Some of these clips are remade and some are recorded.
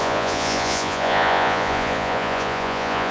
remade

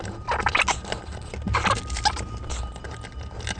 recorded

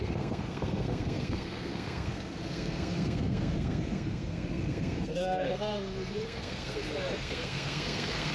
remade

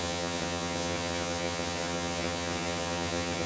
remade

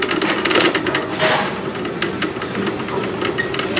recorded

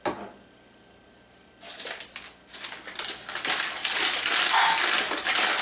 recorded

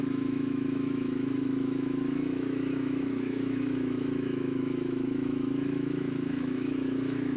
remade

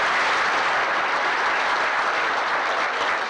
recorded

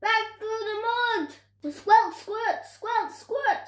recorded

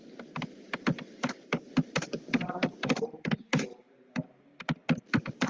remade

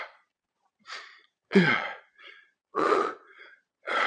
remade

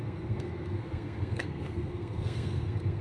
remade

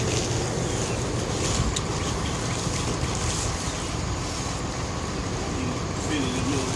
recorded